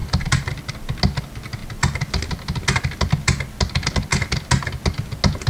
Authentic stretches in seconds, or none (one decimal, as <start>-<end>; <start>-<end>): 0.0-5.5